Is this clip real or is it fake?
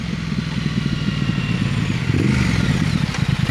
real